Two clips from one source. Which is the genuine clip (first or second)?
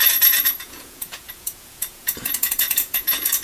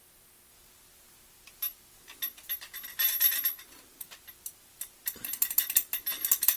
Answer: second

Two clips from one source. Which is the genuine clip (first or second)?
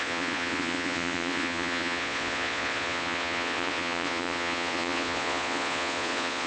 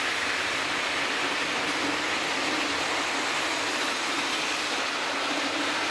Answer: second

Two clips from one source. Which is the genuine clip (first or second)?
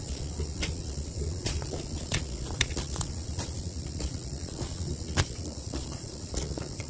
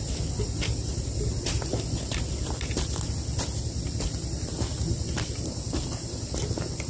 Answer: second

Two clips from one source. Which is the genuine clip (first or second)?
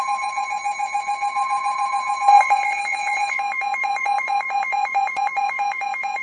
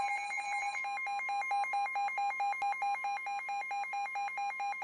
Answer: second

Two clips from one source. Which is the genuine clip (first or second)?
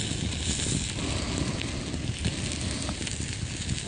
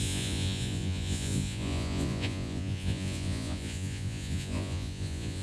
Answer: first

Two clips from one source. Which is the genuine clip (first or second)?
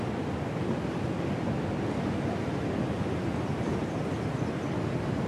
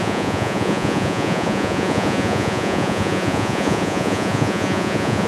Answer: first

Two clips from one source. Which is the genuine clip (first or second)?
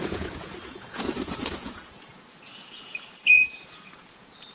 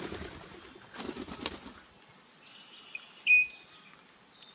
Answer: second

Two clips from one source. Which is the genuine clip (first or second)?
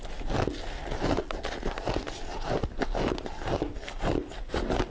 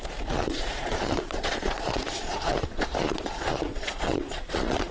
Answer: first